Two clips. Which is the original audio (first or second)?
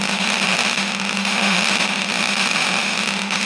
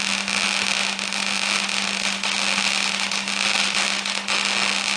second